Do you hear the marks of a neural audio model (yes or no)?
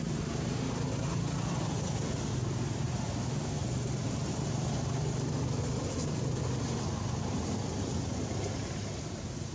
no